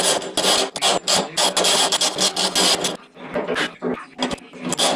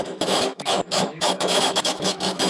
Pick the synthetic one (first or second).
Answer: second